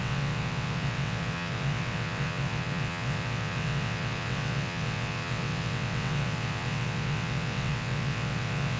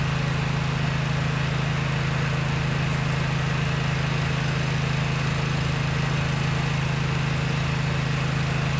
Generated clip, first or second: first